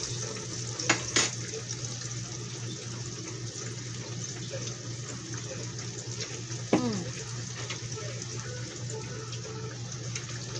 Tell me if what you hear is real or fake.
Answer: real